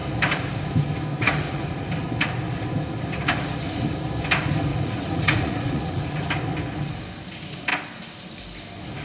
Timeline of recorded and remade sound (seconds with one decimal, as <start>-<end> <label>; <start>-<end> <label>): 0.0-1.1 recorded; 1.1-1.9 remade; 1.9-4.7 recorded; 4.7-6.3 remade; 6.3-9.0 recorded

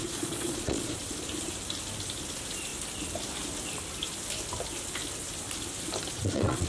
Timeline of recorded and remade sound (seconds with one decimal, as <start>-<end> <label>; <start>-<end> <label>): 0.0-1.0 remade; 1.0-6.1 recorded; 6.1-6.7 remade

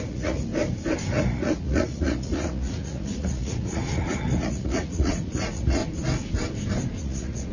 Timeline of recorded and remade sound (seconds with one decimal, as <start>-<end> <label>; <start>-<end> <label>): 0.0-0.5 remade; 0.5-1.1 recorded; 1.1-5.8 remade; 5.8-7.0 recorded; 7.0-7.5 remade

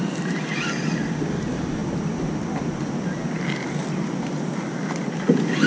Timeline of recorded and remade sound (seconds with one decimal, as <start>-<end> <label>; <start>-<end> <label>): 0.0-5.7 recorded

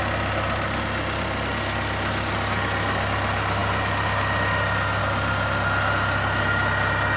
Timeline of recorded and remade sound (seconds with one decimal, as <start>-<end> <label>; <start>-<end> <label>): 0.0-7.2 recorded